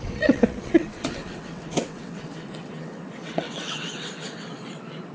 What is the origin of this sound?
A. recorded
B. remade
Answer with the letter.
B